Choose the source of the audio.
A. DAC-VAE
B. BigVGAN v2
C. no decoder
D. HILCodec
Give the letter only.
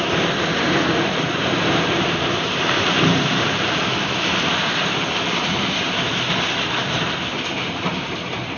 B